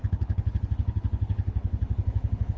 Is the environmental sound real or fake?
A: fake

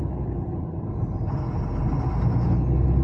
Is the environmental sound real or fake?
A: real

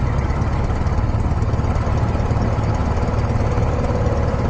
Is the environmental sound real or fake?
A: real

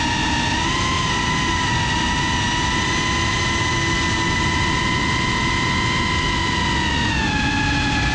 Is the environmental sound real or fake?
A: real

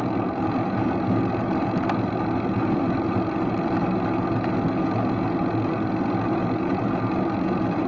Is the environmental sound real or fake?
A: real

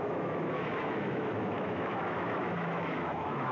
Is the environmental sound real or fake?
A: fake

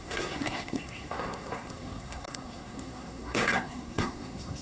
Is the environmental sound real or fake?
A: fake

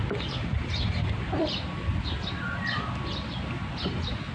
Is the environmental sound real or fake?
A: real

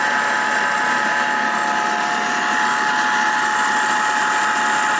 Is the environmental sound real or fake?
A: real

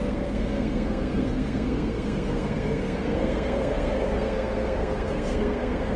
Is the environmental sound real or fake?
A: fake